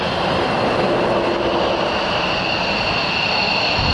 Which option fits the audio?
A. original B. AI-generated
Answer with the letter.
A